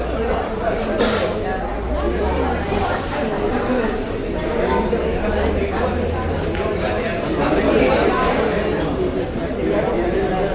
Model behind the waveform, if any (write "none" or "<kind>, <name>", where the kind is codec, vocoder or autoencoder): none